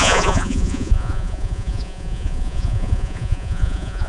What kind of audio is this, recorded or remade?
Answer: remade